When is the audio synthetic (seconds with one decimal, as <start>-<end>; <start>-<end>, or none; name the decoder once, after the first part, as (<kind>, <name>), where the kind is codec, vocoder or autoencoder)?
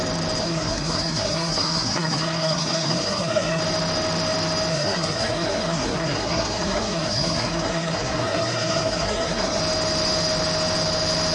0.4-3.6 (codec, SNAC); 4.7-9.6